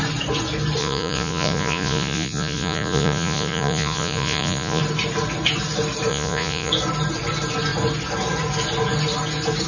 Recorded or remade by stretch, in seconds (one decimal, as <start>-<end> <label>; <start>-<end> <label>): 0.0-0.8 recorded; 0.8-4.8 remade; 4.8-6.1 recorded; 6.1-6.7 remade; 6.7-9.7 recorded